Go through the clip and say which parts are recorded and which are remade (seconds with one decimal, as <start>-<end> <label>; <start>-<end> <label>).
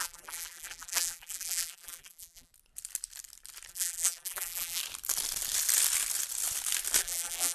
0.0-2.5 remade; 2.5-3.7 recorded; 3.7-4.8 remade; 4.8-7.0 recorded; 7.0-7.5 remade